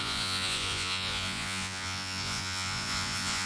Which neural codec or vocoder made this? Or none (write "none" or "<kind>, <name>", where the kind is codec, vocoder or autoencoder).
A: vocoder, Vocos